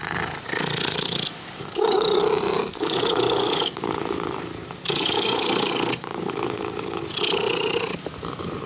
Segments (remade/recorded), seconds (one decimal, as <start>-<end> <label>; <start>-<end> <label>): 0.0-0.9 recorded; 0.9-2.2 remade; 2.2-2.7 recorded; 2.7-7.0 remade; 7.0-8.7 recorded